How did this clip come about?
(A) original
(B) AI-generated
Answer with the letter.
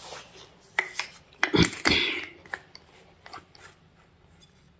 A